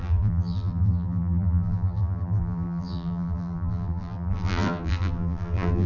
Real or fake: fake